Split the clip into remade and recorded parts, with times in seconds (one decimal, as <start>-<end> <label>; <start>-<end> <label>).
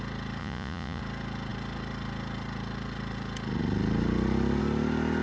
0.0-0.4 recorded; 0.4-1.0 remade; 1.0-5.2 recorded